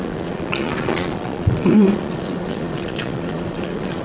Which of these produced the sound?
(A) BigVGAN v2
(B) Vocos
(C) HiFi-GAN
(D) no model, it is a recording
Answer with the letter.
B